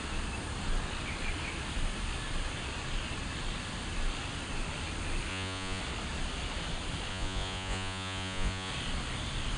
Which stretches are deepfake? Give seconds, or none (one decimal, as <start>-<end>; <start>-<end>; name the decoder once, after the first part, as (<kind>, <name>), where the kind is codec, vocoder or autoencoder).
5.3-5.8 (vocoder, Vocos); 7.1-8.7